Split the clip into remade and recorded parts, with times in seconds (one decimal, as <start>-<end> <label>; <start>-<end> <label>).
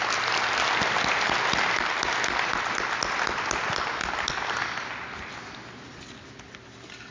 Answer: 0.0-7.1 recorded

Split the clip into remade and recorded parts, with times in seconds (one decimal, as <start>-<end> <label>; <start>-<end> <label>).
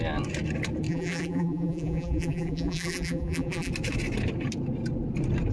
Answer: 0.0-0.9 recorded; 0.9-3.7 remade; 3.7-5.5 recorded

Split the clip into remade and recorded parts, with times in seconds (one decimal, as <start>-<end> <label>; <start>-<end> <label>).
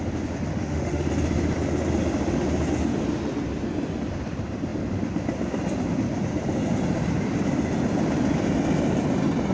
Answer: 0.0-0.5 recorded; 0.5-1.1 remade; 1.1-9.5 recorded